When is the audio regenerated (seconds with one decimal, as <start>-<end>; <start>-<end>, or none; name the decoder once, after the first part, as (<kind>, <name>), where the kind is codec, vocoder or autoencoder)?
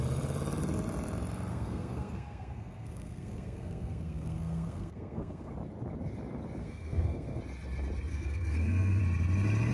1.5-5.5 (codec, SNAC); 6.6-7.4; 8.1-9.0